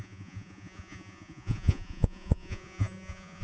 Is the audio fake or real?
fake